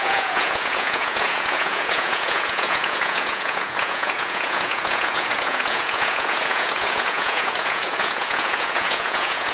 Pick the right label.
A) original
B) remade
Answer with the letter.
B